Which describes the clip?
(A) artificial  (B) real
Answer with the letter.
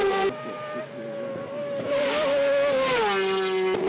B